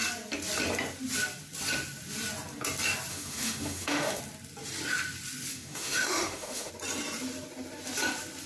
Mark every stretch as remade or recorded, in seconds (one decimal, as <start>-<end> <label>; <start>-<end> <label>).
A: 0.0-3.1 recorded; 3.1-4.2 remade; 4.2-5.5 recorded; 5.5-6.7 remade; 6.7-8.5 recorded